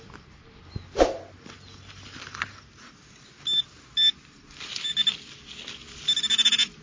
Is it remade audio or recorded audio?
recorded